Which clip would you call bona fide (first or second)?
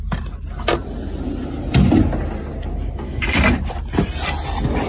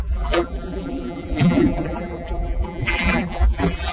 first